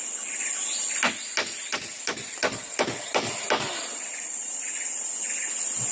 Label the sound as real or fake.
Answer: real